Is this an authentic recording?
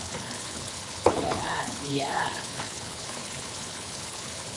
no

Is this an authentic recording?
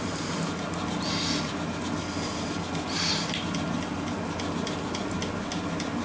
yes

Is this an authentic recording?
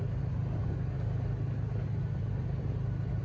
yes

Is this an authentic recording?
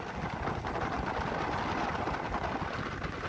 yes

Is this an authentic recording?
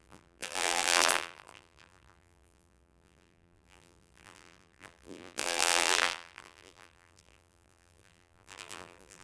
no